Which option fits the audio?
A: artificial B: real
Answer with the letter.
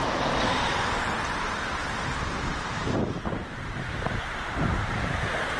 A